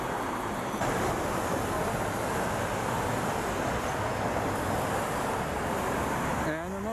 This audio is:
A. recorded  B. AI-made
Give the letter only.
A